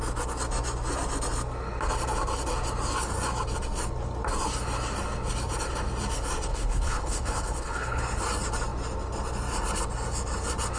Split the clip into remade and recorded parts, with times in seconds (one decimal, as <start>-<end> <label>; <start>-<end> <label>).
0.0-6.5 recorded; 6.5-8.0 remade; 8.0-10.8 recorded